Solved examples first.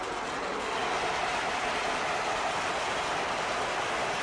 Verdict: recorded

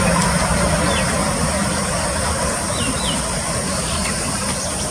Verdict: recorded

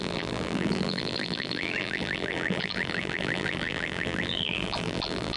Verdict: remade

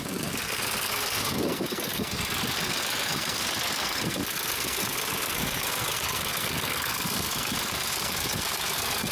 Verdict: remade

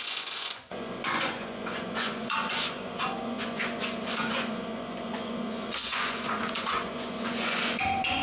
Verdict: remade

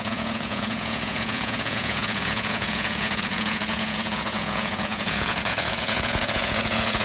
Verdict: remade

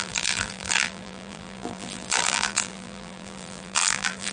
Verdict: remade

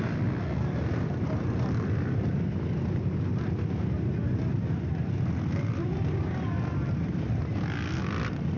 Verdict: recorded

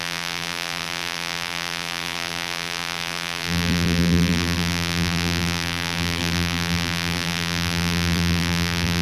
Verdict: remade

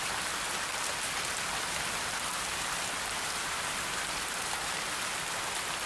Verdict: recorded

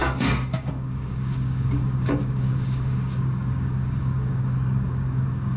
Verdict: remade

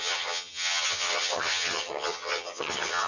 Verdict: remade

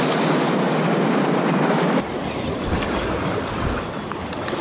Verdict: recorded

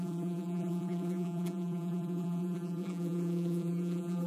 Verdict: remade